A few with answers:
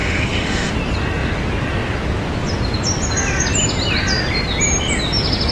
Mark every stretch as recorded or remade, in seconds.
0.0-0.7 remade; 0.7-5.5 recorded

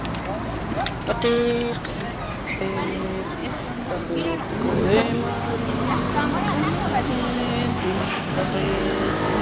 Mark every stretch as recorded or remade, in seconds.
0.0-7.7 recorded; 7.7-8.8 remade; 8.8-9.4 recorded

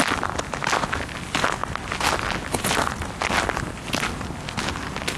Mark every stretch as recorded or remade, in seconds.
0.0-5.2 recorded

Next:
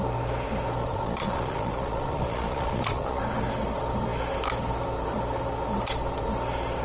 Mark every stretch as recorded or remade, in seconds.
0.0-0.8 recorded; 0.8-3.2 remade; 3.2-6.8 recorded

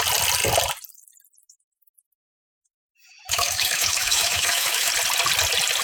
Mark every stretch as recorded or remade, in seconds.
0.0-1.4 recorded; 1.4-4.9 remade; 4.9-5.8 recorded

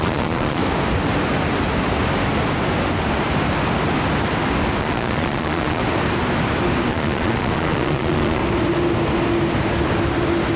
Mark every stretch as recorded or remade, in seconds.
0.0-0.6 remade; 0.6-4.8 recorded; 4.8-5.8 remade; 5.8-6.9 recorded; 6.9-8.4 remade; 8.4-10.6 recorded

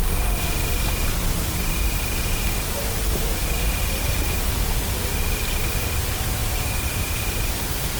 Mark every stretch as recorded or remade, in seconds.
0.0-8.0 recorded

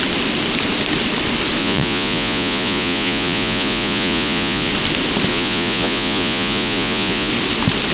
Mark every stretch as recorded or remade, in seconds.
0.0-1.6 recorded; 1.6-4.7 remade; 4.7-5.3 recorded; 5.3-7.3 remade; 7.3-7.9 recorded